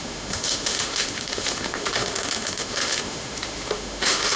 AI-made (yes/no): yes